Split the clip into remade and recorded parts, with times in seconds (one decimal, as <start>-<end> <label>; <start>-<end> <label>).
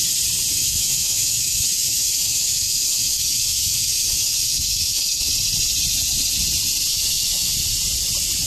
0.0-0.5 recorded; 0.5-5.3 remade; 5.3-6.9 recorded; 6.9-7.5 remade; 7.5-8.5 recorded